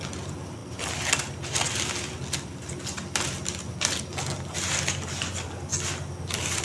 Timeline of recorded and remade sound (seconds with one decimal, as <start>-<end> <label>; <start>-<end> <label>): 0.0-6.6 recorded